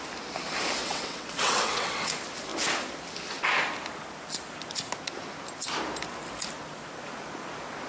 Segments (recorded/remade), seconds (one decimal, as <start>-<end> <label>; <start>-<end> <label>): 0.0-0.8 recorded; 0.8-2.1 remade; 2.1-7.9 recorded

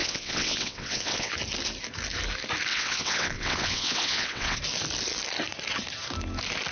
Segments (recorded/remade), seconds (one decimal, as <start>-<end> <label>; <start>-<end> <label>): 0.0-1.3 remade; 1.3-2.7 recorded; 2.7-4.6 remade; 4.6-6.7 recorded

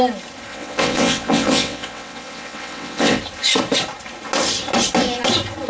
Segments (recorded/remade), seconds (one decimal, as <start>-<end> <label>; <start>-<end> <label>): 0.0-0.5 recorded; 0.5-3.2 remade; 3.2-5.7 recorded

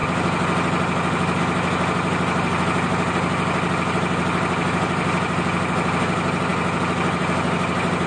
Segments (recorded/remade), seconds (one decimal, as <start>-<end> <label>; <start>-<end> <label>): 0.0-8.1 recorded

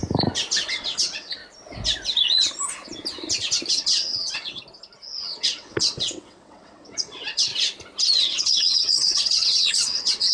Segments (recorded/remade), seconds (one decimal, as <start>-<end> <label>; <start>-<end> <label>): 0.0-0.7 recorded; 0.7-1.4 remade; 1.4-3.7 recorded; 3.7-4.6 remade; 4.6-5.2 recorded; 5.2-7.5 remade; 7.5-8.2 recorded; 8.2-10.3 remade

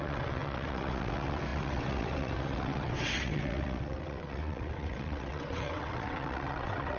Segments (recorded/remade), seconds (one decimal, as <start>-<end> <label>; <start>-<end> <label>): 0.0-7.0 remade

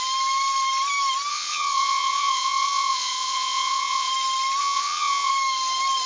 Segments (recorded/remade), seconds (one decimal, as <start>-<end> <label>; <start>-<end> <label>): 0.0-1.3 recorded; 1.3-4.1 remade; 4.1-4.6 recorded; 4.6-5.3 remade; 5.3-6.1 recorded

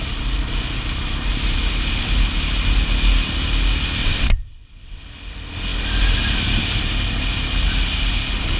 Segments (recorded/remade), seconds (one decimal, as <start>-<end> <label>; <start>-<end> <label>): 0.0-4.0 recorded; 4.0-5.0 remade; 5.0-8.6 recorded